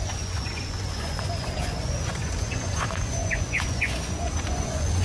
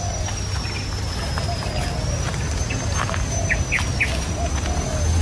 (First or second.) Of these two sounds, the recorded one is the second